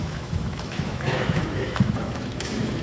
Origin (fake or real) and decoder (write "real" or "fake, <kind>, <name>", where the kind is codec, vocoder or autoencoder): fake, autoencoder, DAC-VAE